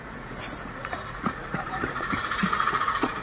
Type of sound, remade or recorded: remade